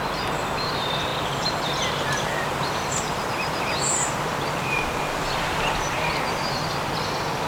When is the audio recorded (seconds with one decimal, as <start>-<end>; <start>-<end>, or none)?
6.1-7.5